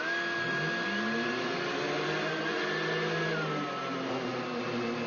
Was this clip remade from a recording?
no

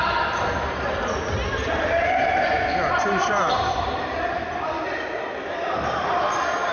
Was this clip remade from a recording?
yes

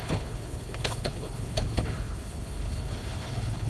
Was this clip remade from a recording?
yes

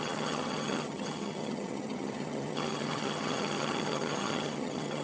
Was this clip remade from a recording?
yes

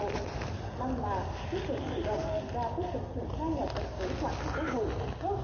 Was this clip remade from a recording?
no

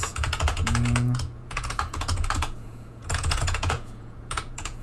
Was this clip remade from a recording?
yes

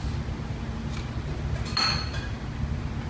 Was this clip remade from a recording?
no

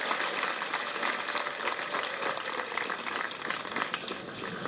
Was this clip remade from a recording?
no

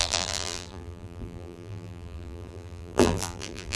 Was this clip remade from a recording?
yes